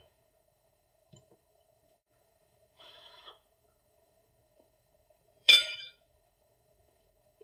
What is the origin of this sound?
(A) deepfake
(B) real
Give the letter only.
A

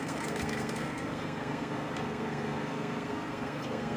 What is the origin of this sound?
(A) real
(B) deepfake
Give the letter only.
B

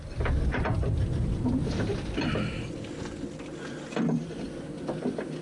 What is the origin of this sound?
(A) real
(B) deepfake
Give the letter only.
B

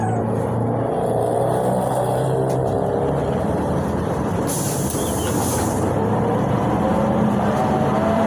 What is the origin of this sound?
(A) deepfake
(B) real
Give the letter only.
A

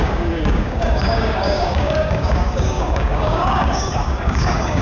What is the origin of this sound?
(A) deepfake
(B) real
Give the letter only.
A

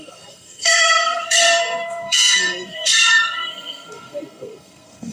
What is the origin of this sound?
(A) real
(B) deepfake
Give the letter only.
B